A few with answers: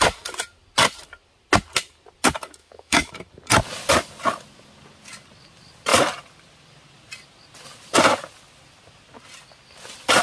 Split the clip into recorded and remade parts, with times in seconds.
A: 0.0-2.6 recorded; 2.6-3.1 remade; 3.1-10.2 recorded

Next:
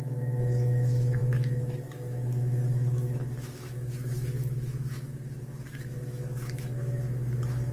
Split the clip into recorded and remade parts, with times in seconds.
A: 0.0-7.7 remade